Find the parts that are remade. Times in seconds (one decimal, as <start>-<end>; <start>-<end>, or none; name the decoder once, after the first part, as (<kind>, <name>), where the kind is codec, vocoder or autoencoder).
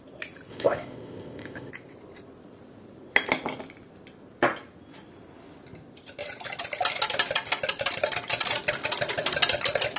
0.5-1.7 (codec, ZipCodec)